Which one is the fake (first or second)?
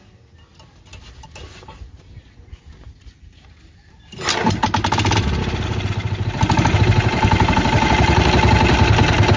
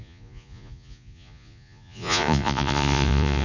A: second